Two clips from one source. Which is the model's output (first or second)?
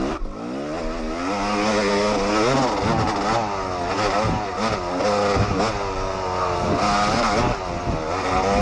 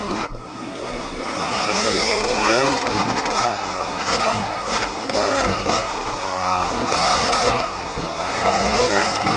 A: second